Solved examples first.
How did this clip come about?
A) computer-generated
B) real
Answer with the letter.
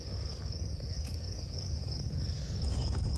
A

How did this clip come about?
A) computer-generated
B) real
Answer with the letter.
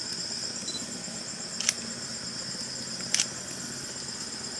B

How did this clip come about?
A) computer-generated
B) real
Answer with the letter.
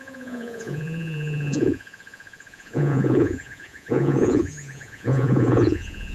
A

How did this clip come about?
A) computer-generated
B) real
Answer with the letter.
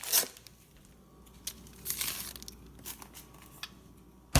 B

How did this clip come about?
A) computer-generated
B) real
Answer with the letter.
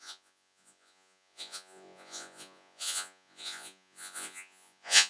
A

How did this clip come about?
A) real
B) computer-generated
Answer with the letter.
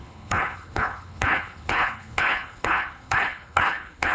B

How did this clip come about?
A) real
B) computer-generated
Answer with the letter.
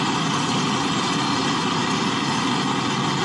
A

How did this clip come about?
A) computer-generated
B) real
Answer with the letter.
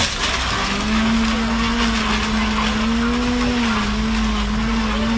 B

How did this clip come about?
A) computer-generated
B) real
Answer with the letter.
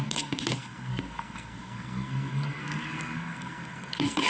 A